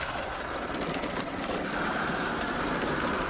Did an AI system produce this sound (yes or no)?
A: no